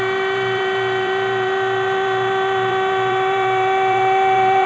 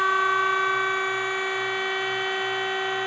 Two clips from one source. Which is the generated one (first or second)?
first